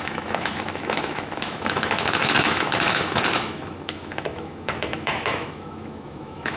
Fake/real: fake